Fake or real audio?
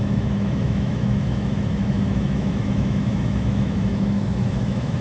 fake